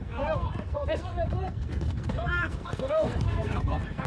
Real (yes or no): no